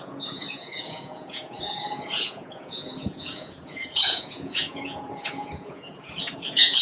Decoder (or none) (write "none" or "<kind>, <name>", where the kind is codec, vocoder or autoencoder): vocoder, Vocos